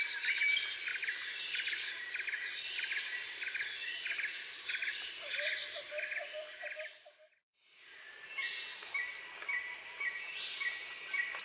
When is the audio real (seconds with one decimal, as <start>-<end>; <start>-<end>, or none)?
0.0-11.4